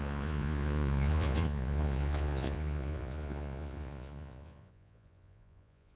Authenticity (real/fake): fake